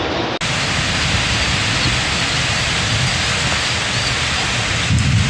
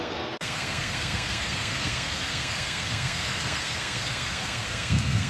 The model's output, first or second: second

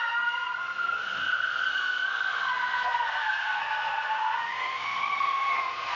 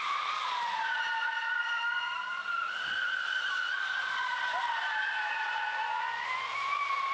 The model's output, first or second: first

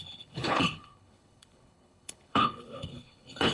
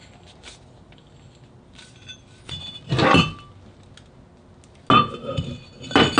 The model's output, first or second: first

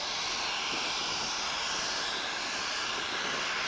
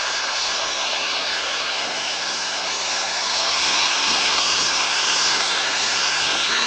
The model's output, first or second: second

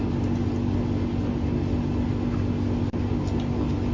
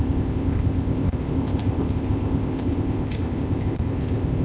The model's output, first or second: second